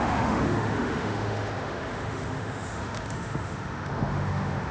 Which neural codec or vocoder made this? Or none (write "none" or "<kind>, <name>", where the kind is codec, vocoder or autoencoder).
autoencoder, DAC-VAE